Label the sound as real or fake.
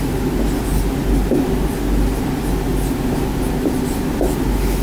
real